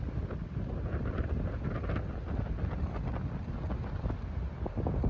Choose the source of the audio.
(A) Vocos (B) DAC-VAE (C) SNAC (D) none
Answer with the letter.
D